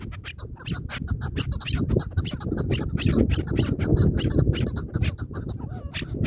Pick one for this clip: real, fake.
real